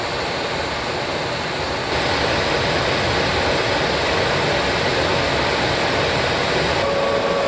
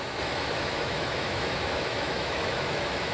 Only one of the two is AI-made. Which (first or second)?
second